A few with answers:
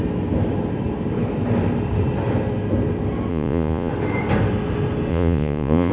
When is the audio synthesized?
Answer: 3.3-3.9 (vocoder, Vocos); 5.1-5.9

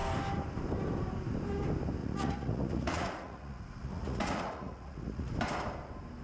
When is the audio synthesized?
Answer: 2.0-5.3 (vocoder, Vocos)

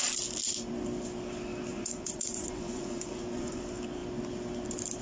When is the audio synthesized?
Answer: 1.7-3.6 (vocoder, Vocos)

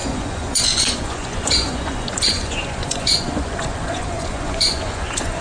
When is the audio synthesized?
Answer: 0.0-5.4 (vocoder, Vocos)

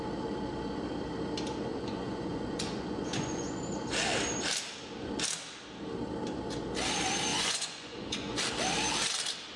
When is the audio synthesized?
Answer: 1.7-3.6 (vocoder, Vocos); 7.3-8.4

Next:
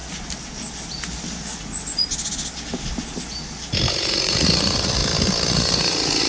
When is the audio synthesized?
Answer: 1.6-2.1 (vocoder, Vocos); 3.9-5.0; 5.5-6.3

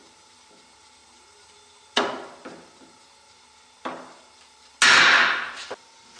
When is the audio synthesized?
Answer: none

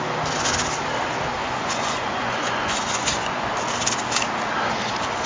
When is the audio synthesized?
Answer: 1.4-3.5 (vocoder, Vocos)